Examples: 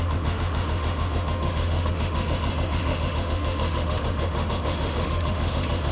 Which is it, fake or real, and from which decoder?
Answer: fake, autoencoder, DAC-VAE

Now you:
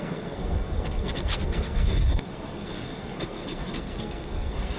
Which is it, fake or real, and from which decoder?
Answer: fake, codec, SNAC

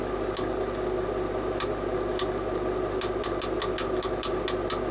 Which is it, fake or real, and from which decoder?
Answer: real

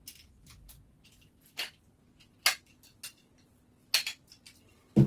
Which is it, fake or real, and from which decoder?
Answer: real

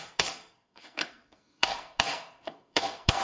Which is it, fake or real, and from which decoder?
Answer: fake, codec, SNAC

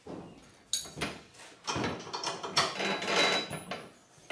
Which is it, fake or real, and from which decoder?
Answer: real